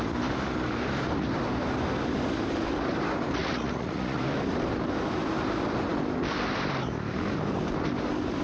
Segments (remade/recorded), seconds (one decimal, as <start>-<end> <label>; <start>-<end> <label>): 0.0-3.4 recorded; 3.4-4.2 remade; 4.2-8.4 recorded